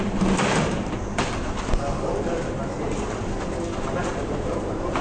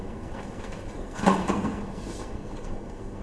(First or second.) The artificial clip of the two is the second